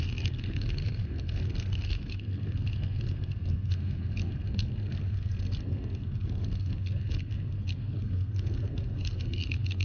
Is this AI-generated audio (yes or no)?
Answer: yes